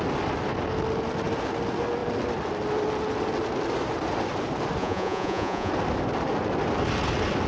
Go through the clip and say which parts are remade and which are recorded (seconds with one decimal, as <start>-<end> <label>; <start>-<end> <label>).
0.0-4.8 recorded; 4.8-5.7 remade; 5.7-7.5 recorded